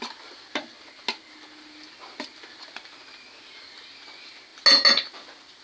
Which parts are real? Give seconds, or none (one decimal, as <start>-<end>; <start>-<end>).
0.0-5.6